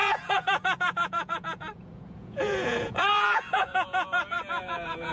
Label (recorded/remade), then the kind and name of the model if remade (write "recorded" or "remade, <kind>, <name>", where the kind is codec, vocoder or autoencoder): remade, vocoder, Vocos